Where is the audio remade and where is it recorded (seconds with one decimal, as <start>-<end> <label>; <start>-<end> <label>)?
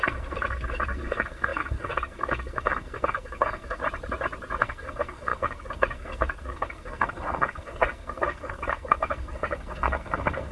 0.0-3.8 remade; 3.8-4.6 recorded; 4.6-10.5 remade